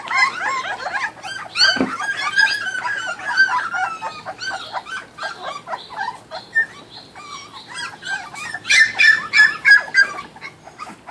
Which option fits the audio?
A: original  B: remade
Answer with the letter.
A